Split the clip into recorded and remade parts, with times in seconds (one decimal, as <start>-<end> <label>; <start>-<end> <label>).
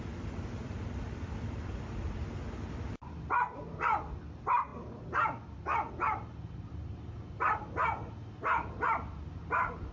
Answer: 0.0-2.2 remade; 2.2-4.2 recorded; 4.2-7.8 remade; 7.8-9.4 recorded; 9.4-9.9 remade